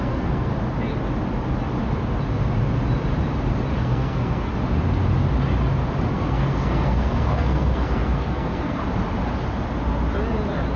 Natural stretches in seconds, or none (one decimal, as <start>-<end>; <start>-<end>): 0.5-3.8; 4.5-6.1; 8.8-10.8